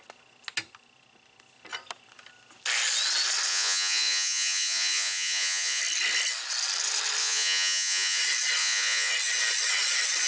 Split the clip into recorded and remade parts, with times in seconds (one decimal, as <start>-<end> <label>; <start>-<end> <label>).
0.0-3.5 recorded; 3.5-5.8 remade; 5.8-7.2 recorded; 7.2-8.2 remade; 8.2-8.6 recorded; 8.6-9.1 remade; 9.1-10.3 recorded